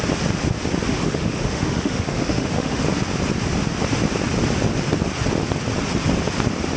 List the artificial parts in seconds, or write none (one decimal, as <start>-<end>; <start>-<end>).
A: 0.9-2.8